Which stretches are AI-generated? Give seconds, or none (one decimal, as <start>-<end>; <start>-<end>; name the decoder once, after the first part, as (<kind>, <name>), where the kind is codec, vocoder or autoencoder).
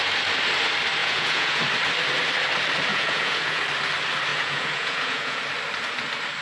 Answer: 1.0-1.6 (vocoder, Vocos); 2.9-3.6; 4.3-5.4